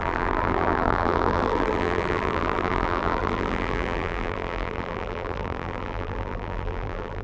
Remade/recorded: remade